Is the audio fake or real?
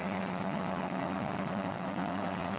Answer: fake